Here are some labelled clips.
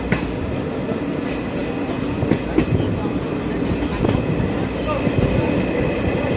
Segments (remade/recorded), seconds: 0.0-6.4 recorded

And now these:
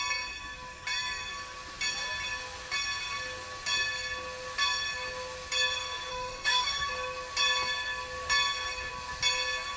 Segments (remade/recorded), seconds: 0.0-6.1 recorded; 6.1-6.9 remade; 6.9-9.8 recorded

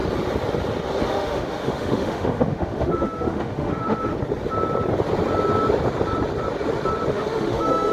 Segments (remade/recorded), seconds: 0.0-1.1 recorded; 1.1-4.1 remade; 4.1-7.1 recorded; 7.1-7.9 remade